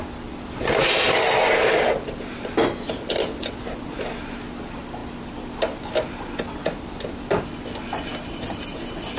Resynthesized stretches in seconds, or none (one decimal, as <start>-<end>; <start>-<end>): none